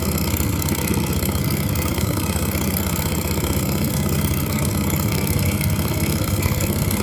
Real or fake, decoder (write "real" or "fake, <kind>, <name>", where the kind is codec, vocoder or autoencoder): fake, codec, SNAC